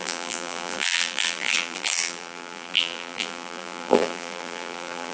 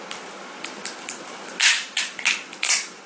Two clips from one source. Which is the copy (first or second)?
first